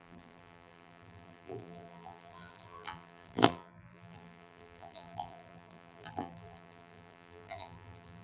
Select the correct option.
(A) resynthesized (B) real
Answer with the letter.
A